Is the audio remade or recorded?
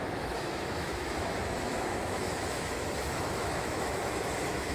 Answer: remade